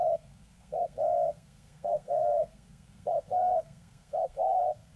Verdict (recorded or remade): remade